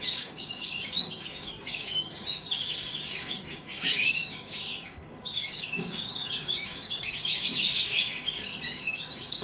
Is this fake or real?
fake